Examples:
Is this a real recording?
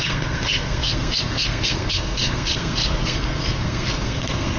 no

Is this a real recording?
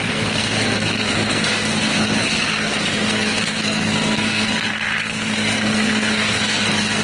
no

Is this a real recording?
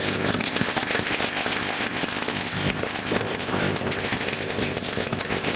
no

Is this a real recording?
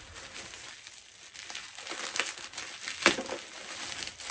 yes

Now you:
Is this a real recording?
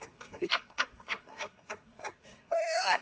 no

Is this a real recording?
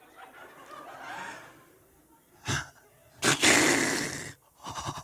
yes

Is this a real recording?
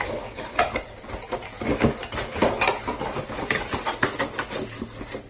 yes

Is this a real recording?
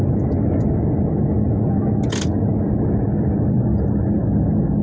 yes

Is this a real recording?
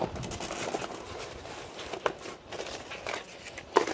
yes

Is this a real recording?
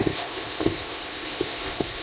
no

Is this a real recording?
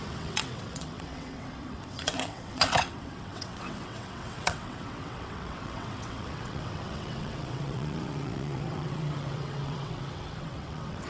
no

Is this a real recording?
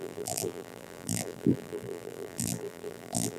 no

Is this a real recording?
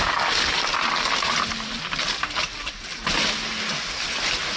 yes